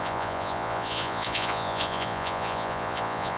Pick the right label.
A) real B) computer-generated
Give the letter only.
B